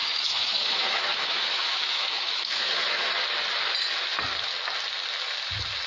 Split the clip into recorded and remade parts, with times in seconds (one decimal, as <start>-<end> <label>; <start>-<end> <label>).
0.0-3.1 remade; 3.1-5.9 recorded